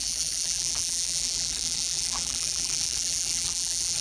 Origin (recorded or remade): remade